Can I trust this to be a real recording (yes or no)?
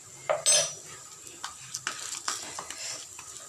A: yes